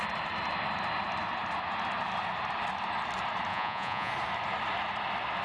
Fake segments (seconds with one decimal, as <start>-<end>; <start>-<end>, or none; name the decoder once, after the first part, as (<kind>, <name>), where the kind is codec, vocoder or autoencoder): 3.5-4.1 (vocoder, Vocos)